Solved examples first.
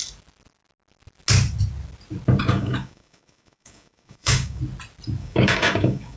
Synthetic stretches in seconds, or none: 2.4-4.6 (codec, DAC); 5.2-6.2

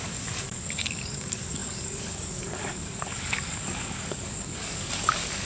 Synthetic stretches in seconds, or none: 0.0-5.5 (codec, DAC)

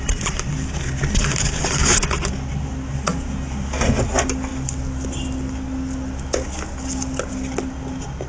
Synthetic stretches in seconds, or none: none

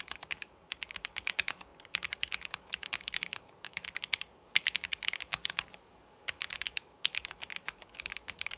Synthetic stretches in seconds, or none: 0.0-8.6 (codec, DAC)

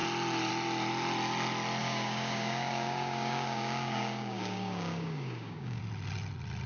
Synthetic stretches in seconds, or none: 1.8-5.8 (codec, DAC)

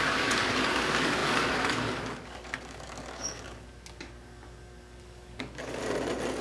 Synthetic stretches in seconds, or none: 0.0-5.8 (codec, DAC)